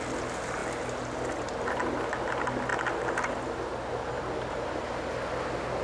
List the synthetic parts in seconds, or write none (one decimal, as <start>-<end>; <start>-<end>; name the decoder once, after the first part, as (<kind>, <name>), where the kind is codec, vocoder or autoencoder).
none